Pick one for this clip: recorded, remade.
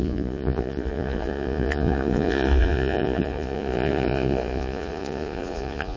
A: remade